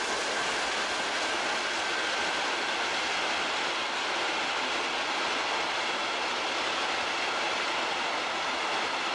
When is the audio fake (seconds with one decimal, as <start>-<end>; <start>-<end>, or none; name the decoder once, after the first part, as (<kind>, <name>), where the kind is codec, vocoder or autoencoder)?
none